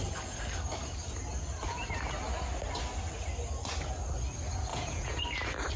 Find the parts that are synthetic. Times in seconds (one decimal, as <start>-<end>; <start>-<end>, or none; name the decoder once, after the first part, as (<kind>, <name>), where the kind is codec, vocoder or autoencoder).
4.7-5.2 (vocoder, Vocos)